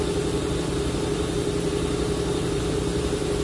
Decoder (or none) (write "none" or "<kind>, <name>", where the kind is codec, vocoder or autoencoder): none